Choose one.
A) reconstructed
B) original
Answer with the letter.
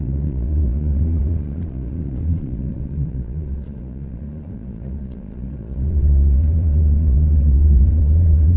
A